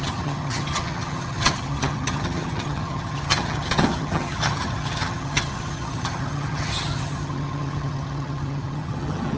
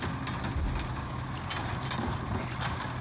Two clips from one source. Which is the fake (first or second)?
first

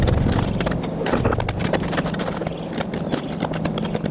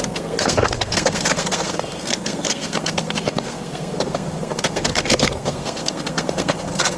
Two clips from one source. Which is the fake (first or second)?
second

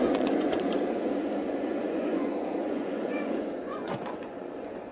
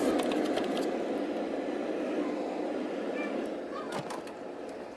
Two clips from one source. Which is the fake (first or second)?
first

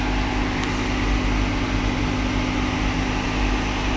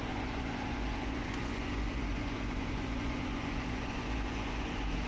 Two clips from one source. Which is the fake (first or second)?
second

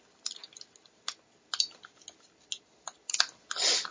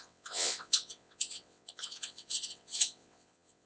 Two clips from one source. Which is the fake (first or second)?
second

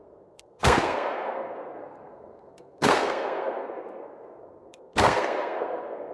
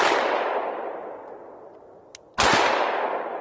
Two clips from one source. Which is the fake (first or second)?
first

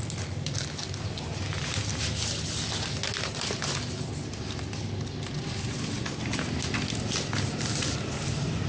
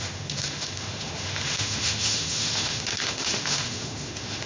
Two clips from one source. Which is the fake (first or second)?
second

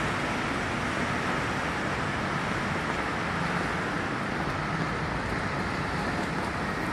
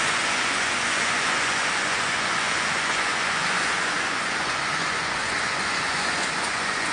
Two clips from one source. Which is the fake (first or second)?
second